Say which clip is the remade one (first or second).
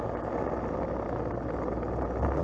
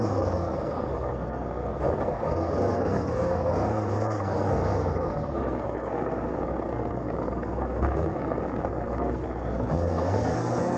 second